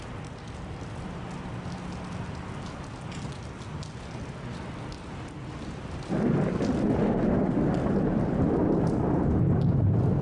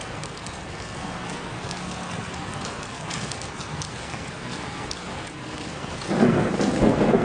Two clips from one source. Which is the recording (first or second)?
first